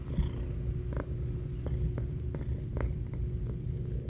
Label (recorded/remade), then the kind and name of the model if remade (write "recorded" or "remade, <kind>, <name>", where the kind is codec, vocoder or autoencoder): recorded